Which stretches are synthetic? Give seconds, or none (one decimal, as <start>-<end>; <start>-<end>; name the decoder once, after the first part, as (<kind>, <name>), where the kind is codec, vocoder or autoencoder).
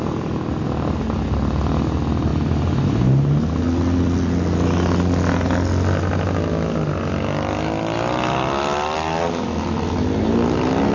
none